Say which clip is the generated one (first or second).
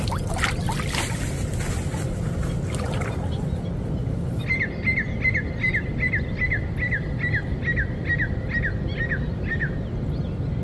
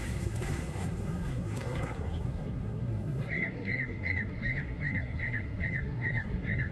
second